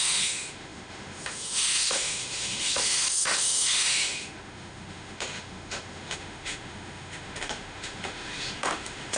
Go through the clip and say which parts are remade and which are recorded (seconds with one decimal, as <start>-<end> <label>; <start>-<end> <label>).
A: 0.0-9.2 remade

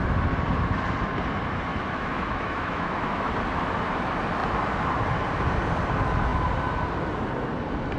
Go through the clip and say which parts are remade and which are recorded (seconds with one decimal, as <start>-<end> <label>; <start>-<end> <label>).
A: 0.0-1.7 recorded; 1.7-3.3 remade; 3.3-8.0 recorded

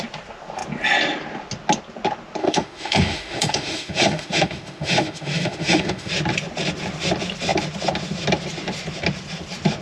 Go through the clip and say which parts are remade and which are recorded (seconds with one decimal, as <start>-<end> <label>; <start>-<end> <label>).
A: 0.0-2.4 recorded; 2.4-6.1 remade; 6.1-9.8 recorded

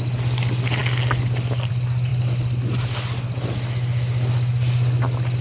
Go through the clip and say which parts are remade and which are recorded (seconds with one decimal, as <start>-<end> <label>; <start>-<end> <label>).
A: 0.0-5.4 recorded

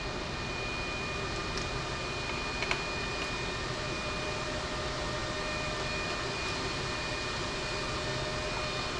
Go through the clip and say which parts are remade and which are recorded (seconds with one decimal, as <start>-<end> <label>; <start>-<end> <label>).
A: 0.0-9.0 recorded

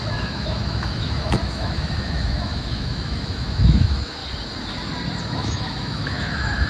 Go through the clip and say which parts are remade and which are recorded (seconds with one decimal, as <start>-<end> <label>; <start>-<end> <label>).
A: 0.0-4.2 remade; 4.2-5.2 recorded; 5.2-6.7 remade